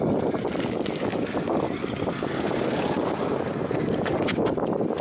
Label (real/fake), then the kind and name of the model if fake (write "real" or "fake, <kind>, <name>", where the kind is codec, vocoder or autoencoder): real